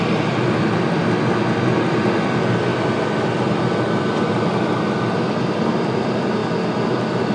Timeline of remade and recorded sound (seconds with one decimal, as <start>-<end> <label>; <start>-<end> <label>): 0.0-7.3 recorded